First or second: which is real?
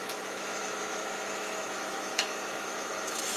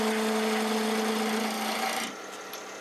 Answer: second